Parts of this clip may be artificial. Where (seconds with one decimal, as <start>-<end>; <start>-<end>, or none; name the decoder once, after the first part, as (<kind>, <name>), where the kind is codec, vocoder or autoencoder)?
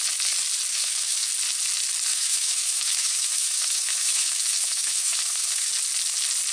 0.7-1.3 (autoencoder, DAC-VAE); 2.1-5.7